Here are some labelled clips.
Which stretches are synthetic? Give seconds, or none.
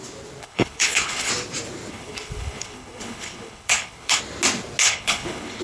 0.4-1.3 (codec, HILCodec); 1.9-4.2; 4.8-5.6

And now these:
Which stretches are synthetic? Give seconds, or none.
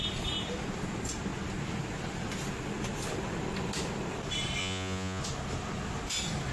4.6-5.2 (vocoder, Vocos)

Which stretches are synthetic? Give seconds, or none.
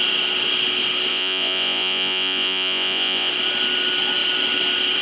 1.1-3.3 (vocoder, Vocos)